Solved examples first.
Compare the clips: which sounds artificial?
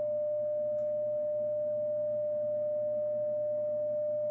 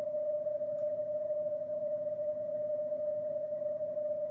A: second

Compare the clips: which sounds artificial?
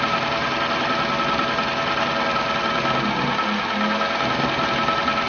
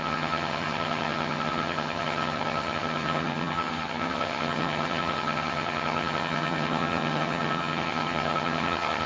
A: second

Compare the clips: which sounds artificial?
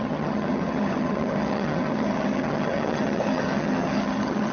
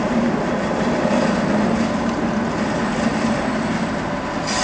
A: first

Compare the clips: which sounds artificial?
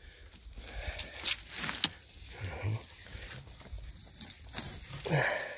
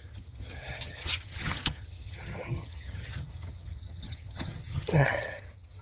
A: second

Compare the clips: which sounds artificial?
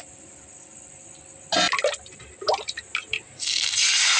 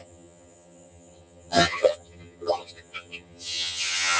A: second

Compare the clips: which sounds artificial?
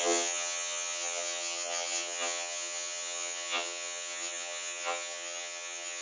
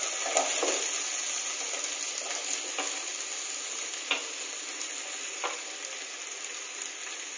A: first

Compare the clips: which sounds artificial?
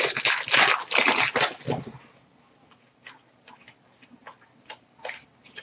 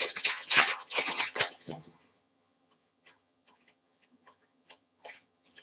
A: second